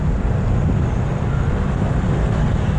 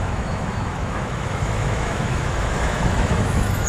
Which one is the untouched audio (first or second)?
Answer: first